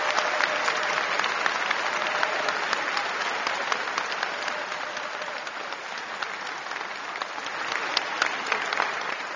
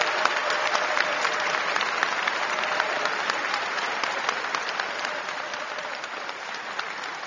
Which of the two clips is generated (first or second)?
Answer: second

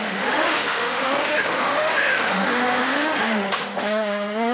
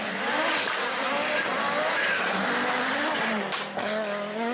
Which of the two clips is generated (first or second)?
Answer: first